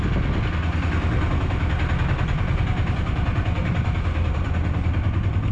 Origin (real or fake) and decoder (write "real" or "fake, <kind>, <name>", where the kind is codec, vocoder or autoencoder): real